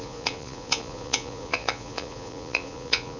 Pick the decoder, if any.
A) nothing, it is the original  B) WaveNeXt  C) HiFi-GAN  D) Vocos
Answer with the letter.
D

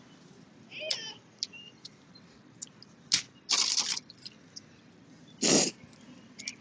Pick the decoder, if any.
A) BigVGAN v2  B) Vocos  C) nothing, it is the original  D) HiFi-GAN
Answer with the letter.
C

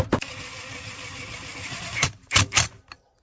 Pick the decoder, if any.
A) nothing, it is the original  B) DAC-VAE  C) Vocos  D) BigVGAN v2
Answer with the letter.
A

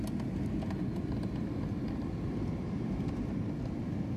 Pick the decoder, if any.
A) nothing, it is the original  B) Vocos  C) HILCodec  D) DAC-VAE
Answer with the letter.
A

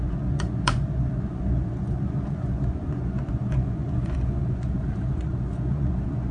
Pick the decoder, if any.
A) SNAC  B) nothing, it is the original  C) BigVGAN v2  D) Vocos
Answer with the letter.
D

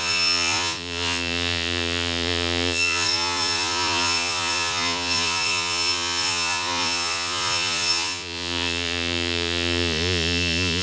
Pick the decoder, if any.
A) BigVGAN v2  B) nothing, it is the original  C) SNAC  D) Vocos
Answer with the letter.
D